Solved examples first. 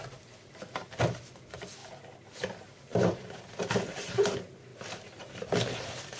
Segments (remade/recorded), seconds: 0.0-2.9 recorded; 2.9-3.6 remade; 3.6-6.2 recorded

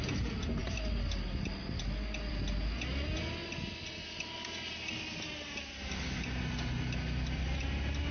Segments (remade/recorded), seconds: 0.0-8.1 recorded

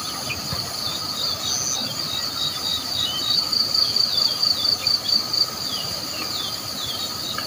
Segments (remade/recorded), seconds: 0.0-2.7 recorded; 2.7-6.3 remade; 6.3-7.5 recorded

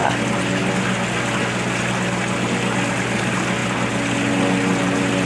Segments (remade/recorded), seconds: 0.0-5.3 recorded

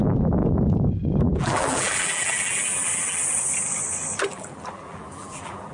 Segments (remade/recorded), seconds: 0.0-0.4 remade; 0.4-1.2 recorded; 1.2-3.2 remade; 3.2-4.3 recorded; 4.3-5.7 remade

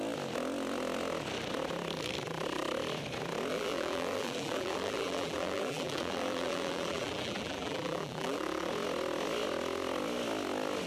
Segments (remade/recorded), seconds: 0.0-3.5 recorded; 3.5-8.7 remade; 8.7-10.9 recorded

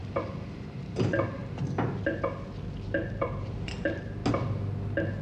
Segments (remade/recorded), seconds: 0.0-0.5 recorded; 0.5-1.4 remade; 1.4-3.2 recorded; 3.2-4.2 remade; 4.2-5.2 recorded

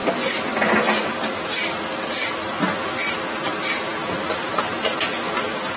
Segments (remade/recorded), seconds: 0.0-3.5 recorded; 3.5-5.8 remade